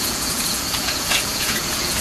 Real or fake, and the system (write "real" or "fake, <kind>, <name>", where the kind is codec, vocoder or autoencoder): fake, vocoder, Vocos